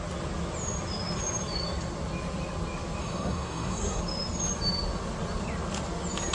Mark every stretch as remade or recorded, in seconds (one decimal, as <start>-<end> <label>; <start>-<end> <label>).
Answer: 0.0-3.0 recorded; 3.0-4.0 remade; 4.0-6.3 recorded